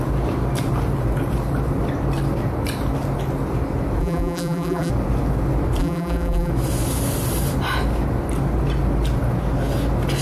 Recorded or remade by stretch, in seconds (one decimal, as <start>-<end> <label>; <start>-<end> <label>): 0.0-4.0 recorded; 4.0-4.9 remade; 4.9-5.8 recorded; 5.8-6.5 remade; 6.5-10.2 recorded